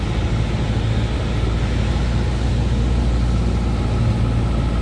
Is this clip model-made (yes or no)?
no